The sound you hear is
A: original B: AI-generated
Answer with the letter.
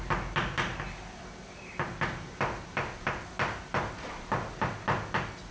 A